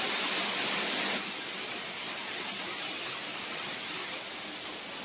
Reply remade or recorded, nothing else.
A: recorded